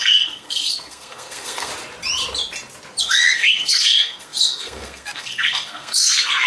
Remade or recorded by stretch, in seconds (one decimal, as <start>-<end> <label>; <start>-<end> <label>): 0.0-1.7 remade; 1.7-3.0 recorded; 3.0-6.5 remade